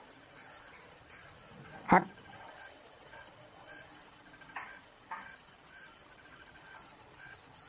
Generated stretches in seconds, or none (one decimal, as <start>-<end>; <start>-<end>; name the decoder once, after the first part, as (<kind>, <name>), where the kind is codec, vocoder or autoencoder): none